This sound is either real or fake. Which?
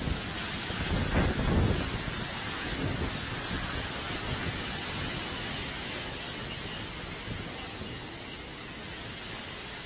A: real